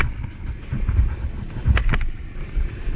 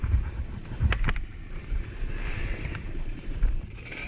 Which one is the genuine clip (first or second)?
first